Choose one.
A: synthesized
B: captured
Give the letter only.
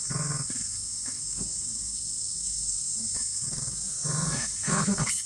A